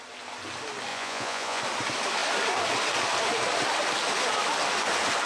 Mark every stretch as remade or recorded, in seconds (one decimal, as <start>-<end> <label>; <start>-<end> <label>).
0.0-0.9 recorded; 0.9-1.6 remade; 1.6-5.3 recorded

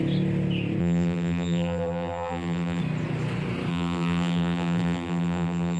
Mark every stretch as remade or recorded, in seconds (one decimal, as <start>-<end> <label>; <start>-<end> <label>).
0.0-0.8 recorded; 0.8-2.8 remade; 2.8-3.7 recorded; 3.7-5.8 remade